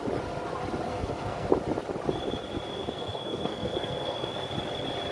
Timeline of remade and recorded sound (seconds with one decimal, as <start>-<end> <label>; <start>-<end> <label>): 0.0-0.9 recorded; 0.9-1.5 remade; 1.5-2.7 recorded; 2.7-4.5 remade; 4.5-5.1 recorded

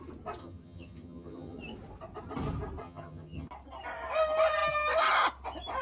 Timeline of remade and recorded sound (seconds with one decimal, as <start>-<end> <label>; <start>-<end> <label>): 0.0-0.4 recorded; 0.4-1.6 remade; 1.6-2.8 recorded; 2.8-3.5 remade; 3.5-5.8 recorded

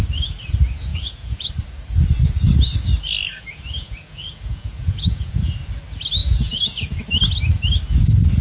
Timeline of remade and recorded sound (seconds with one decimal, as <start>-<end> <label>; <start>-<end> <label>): 0.0-0.9 recorded; 0.9-1.5 remade; 1.5-3.3 recorded; 3.3-5.4 remade; 5.4-6.2 recorded; 6.2-7.0 remade; 7.0-8.4 recorded